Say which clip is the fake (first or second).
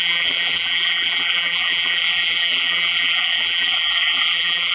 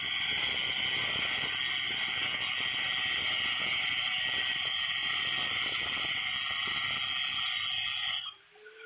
first